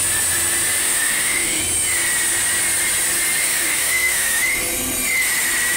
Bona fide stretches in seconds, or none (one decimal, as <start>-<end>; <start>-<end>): 0.0-0.8; 1.6-3.4; 4.4-5.8